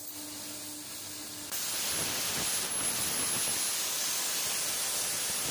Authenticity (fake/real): real